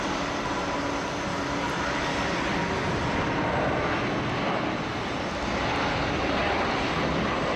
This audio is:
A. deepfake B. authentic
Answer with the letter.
B